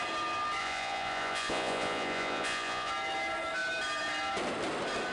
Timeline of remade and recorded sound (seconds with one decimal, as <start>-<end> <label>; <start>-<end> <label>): 0.0-0.6 recorded; 0.6-2.9 remade; 2.9-5.1 recorded